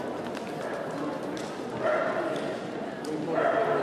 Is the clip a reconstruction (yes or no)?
no